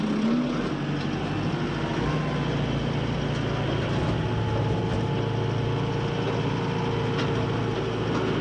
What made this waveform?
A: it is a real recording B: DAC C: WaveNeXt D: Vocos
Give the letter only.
A